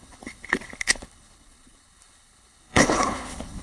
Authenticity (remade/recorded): remade